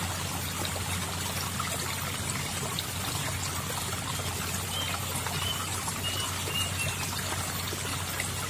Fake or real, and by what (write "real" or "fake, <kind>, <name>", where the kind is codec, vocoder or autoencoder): real